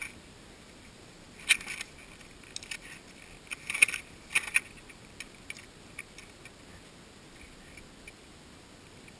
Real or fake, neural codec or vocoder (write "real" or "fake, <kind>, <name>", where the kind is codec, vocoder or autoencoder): real